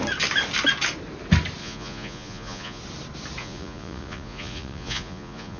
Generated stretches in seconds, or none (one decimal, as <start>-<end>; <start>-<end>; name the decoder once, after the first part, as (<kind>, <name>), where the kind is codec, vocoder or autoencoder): 1.6-2.8 (vocoder, Vocos); 3.4-5.6